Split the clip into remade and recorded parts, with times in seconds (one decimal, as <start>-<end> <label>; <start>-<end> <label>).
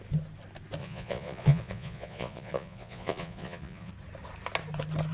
0.0-0.8 recorded; 0.8-3.9 remade; 3.9-5.1 recorded